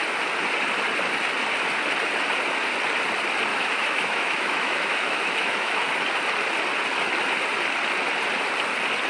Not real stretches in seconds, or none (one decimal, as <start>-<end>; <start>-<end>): 3.5-5.9

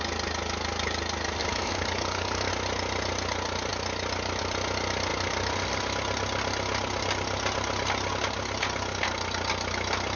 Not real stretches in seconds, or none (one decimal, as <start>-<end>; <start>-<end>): 1.4-2.5

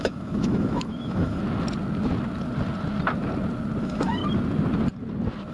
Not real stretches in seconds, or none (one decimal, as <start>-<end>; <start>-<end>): 0.0-1.4; 3.8-4.2

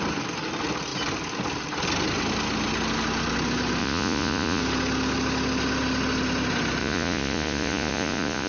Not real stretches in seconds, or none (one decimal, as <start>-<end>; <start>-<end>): 3.8-4.6; 6.8-8.5

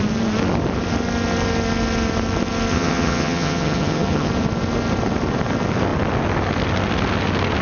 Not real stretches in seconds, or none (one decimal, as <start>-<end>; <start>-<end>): 2.7-4.3